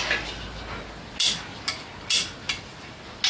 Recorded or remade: recorded